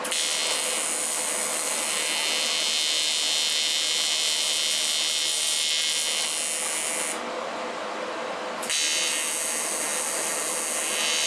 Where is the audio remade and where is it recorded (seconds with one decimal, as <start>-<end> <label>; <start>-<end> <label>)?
0.0-11.3 recorded